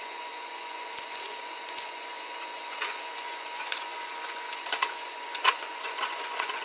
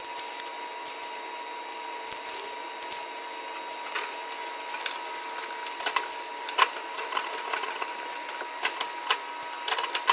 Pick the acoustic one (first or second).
second